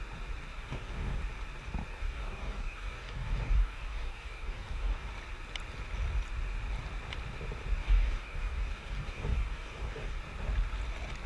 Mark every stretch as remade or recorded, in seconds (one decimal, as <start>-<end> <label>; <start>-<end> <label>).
0.0-0.5 recorded; 0.5-1.2 remade; 1.2-1.9 recorded; 1.9-5.1 remade; 5.1-7.8 recorded; 7.8-10.2 remade; 10.2-11.3 recorded